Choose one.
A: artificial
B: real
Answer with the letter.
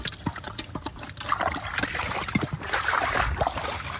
B